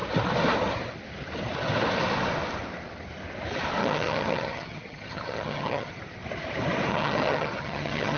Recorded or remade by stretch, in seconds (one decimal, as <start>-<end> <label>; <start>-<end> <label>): 0.0-3.8 recorded; 3.8-6.0 remade; 6.0-6.9 recorded; 6.9-8.2 remade